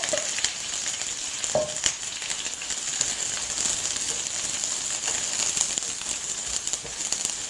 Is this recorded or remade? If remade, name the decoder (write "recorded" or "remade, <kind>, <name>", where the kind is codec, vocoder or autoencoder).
recorded